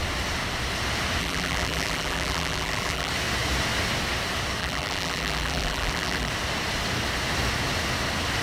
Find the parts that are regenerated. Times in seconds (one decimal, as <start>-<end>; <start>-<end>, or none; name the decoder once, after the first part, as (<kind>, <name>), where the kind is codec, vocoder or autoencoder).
1.2-3.1 (vocoder, BigVGAN v2); 4.6-6.3